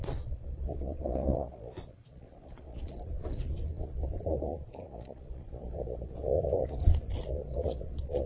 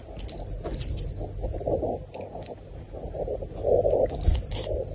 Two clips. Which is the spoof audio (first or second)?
first